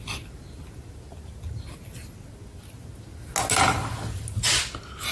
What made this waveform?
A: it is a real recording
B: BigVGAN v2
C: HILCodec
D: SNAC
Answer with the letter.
A